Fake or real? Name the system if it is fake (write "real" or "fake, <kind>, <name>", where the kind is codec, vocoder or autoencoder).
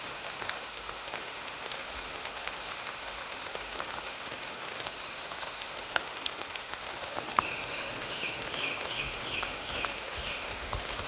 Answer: fake, autoencoder, DAC-VAE